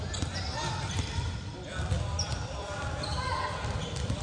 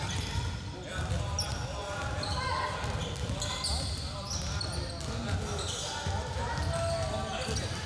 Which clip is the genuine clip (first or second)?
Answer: second